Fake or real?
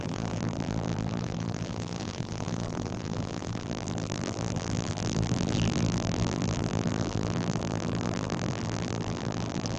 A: fake